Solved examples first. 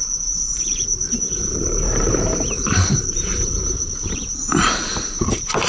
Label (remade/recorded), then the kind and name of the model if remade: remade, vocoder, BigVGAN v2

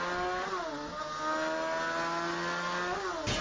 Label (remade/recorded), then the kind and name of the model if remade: recorded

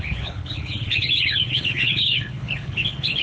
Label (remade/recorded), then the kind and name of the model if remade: remade, codec, HILCodec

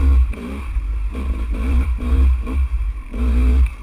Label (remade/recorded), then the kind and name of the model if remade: remade, vocoder, BigVGAN v2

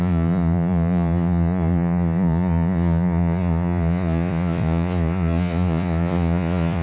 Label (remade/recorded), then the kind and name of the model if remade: remade, vocoder, Vocos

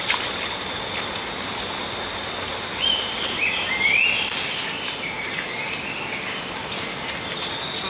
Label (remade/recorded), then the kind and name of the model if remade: recorded